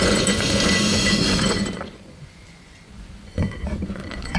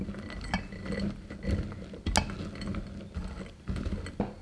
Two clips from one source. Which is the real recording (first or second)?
second